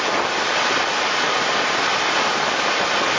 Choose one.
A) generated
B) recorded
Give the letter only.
B